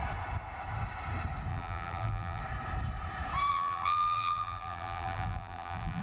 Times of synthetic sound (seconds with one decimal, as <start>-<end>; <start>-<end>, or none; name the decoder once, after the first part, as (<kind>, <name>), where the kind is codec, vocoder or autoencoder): 1.5-2.4 (vocoder, BigVGAN v2); 3.5-6.0